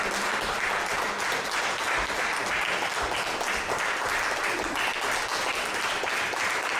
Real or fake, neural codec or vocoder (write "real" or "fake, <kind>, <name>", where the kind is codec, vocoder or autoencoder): real